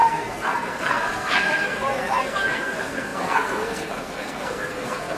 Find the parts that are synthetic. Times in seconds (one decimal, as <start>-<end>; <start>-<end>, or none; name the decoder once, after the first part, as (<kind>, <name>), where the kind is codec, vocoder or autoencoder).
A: 0.0-5.2 (codec, SNAC)